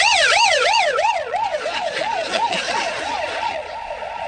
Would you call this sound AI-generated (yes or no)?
yes